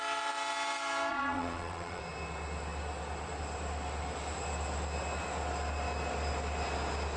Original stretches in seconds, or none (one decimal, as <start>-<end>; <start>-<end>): 0.0-1.1; 2.0-7.2